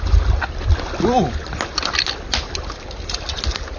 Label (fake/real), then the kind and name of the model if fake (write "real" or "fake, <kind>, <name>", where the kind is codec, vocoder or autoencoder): real